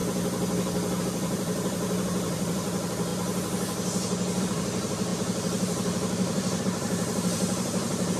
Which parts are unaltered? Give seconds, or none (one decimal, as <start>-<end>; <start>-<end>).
0.0-1.0; 3.1-4.4